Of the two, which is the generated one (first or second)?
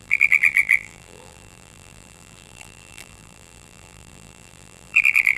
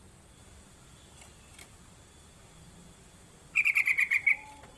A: first